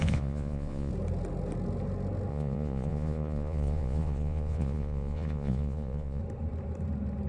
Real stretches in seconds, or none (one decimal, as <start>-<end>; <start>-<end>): 0.9-2.3; 6.2-7.3

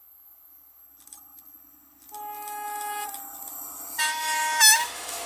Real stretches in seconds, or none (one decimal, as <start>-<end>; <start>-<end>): 0.8-4.0

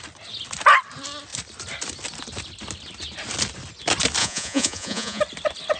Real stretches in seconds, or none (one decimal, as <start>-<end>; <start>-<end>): 0.0-4.2; 5.2-5.8

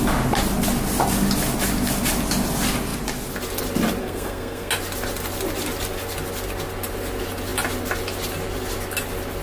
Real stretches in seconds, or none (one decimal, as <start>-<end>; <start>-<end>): 0.0-4.0; 4.7-9.4

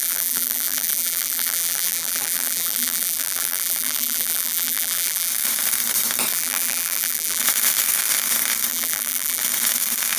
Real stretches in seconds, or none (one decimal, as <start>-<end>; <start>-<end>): 5.3-6.3; 7.4-8.7; 9.4-10.2

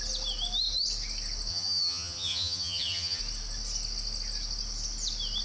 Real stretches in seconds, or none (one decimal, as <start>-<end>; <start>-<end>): 0.0-1.5; 3.2-5.4

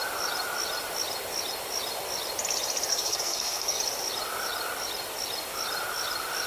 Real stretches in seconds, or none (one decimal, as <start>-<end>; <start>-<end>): 0.0-2.9; 3.8-6.5